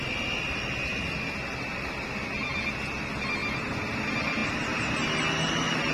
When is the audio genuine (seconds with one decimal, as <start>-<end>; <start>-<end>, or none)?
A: 0.0-5.9